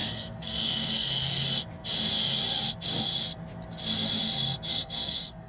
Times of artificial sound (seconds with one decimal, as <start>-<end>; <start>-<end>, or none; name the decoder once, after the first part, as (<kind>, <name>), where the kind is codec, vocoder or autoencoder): 0.0-1.4 (codec, SNAC); 4.7-5.5